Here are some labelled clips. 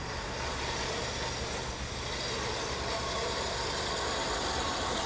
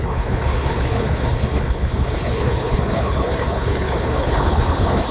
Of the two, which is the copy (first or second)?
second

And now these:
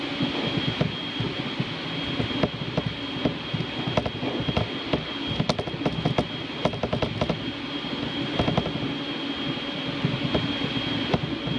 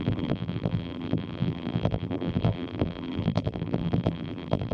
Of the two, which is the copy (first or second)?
second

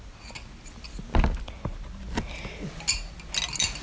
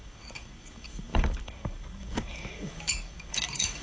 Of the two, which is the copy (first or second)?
second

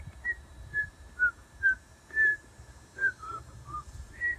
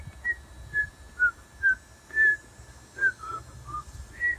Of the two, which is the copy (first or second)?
first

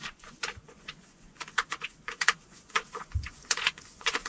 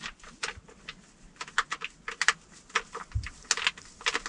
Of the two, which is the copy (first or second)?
first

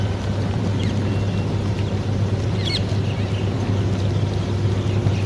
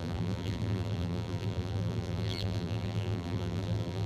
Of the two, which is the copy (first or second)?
second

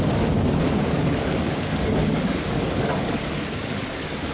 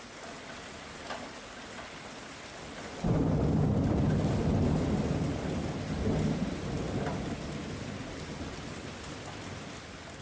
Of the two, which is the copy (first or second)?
first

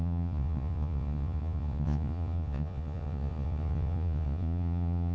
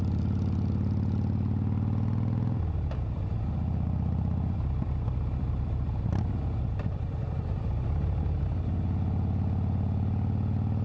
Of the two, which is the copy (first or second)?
first